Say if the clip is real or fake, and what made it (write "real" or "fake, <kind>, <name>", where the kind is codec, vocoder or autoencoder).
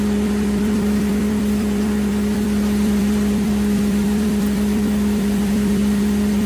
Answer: fake, vocoder, BigVGAN v2